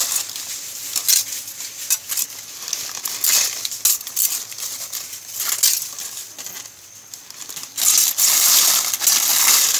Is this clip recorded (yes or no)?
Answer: yes